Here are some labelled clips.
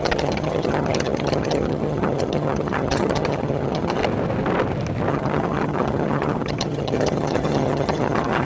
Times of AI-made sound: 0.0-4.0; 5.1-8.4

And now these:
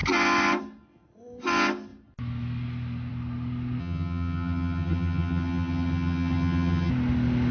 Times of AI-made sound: 3.8-6.9

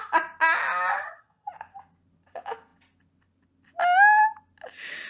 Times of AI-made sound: 0.9-1.5

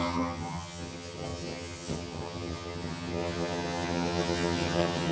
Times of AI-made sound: 0.0-5.1

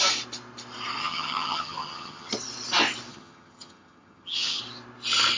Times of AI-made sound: 1.0-2.3; 3.1-4.6

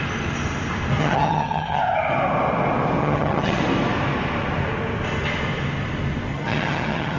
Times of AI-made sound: 1.0-1.8; 3.0-3.6; 6.3-7.2

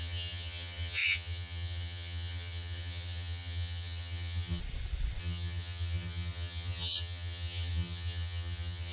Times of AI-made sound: 0.0-4.6; 5.2-8.9

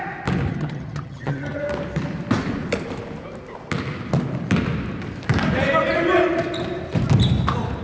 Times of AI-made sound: 0.5-1.6